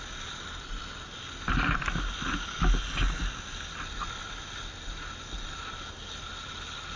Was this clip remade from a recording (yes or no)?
no